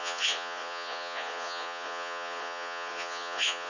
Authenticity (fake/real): fake